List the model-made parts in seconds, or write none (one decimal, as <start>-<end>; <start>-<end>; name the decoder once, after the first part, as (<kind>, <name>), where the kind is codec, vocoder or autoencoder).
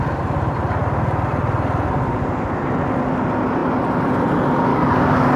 4.7-5.4 (codec, DAC)